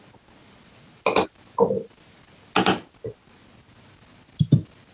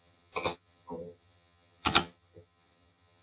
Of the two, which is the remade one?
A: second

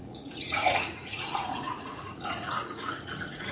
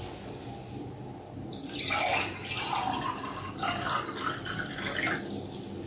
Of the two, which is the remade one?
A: first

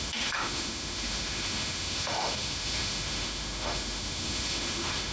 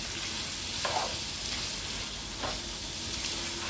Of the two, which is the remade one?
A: first